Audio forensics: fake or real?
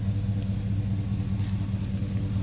real